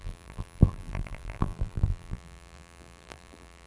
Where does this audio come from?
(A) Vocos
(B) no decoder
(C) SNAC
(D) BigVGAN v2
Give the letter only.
D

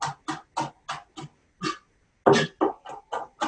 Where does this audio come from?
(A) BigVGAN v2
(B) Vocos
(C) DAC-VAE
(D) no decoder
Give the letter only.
D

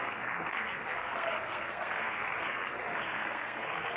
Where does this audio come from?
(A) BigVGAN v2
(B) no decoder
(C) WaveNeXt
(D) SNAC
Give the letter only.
D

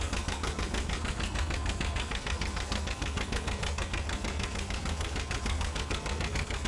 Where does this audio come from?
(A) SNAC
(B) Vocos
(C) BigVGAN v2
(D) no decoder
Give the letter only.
A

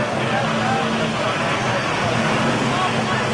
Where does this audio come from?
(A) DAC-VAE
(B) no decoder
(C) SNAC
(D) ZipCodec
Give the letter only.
B